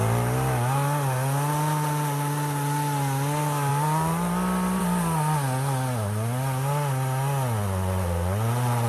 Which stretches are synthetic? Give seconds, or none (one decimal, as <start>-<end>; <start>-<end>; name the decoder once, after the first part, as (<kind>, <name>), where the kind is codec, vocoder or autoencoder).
none